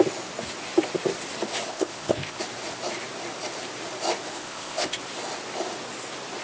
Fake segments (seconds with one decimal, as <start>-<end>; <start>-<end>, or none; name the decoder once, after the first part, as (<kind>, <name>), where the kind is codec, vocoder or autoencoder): 1.7-2.4 (codec, ZipCodec); 4.3-5.0